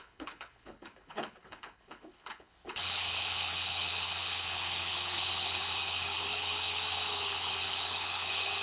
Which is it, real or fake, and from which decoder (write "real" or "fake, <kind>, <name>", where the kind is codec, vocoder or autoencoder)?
fake, codec, HILCodec